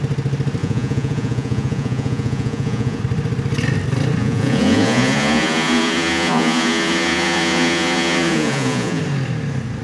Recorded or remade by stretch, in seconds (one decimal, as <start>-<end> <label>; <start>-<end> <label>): 0.0-0.6 recorded; 0.6-3.0 remade; 3.0-4.2 recorded; 4.2-9.0 remade; 9.0-9.8 recorded